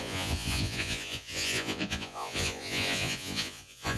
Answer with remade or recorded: remade